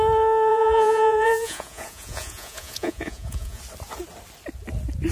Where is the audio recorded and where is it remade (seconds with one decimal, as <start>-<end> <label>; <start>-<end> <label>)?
0.0-0.5 recorded; 0.5-3.6 remade; 3.6-5.1 recorded